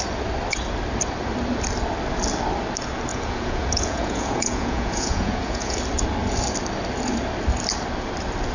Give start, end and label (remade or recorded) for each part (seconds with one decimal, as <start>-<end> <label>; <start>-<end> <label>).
0.0-3.1 recorded; 3.1-5.8 remade; 5.8-8.5 recorded